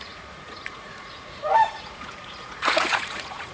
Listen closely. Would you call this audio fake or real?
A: fake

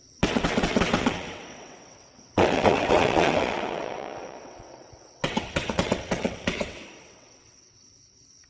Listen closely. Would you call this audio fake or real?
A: fake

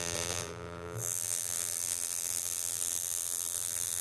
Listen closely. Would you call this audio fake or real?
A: fake